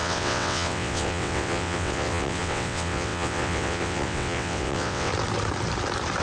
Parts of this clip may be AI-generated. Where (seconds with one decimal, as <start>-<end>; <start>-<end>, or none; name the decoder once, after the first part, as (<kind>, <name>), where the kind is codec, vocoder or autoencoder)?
0.0-5.1 (vocoder, WaveNeXt)